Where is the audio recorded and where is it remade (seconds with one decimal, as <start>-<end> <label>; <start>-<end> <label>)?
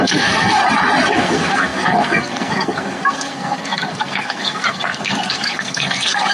0.0-0.6 remade; 0.6-1.1 recorded; 1.1-6.3 remade